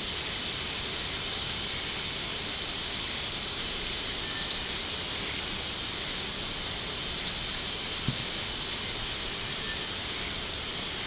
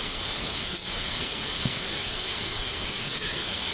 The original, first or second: first